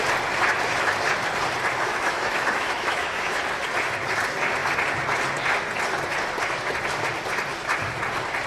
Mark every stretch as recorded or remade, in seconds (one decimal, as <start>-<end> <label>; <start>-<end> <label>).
0.0-1.9 recorded; 1.9-3.4 remade; 3.4-8.5 recorded